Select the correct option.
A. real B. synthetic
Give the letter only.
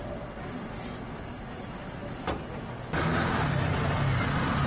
A